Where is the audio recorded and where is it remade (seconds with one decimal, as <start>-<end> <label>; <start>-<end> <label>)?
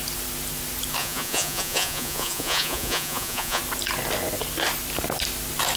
0.0-1.0 recorded; 1.0-3.6 remade; 3.6-5.8 recorded